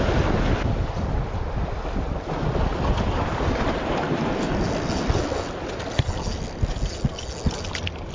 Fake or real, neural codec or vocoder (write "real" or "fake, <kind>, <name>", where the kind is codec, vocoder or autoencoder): real